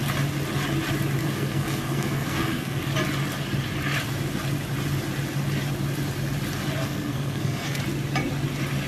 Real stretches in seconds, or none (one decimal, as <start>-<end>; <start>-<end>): 0.0-1.2; 2.8-6.8; 7.8-8.9